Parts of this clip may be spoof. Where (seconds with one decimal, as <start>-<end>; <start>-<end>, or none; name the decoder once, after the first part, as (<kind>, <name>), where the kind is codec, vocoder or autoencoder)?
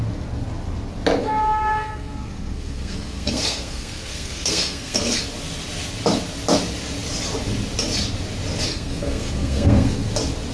1.2-5.2 (codec, SNAC); 8.7-10.1